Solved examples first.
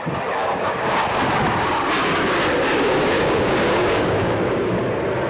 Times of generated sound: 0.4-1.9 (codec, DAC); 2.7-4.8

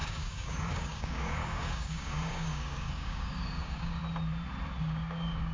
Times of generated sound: 0.0-4.0 (codec, DAC); 4.8-5.5

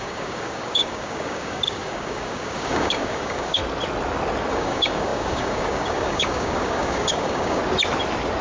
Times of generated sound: 0.0-3.6 (codec, DAC); 4.5-7.6